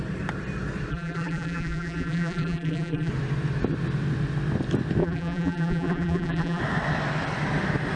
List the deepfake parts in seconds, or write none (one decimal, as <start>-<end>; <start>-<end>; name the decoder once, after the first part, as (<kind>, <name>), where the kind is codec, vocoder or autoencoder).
0.9-3.1 (vocoder, BigVGAN v2); 5.0-6.6